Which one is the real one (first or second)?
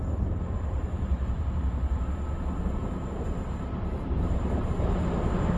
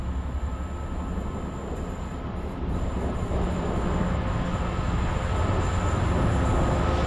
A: second